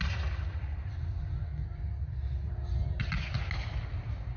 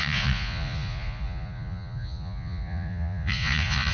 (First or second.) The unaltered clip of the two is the first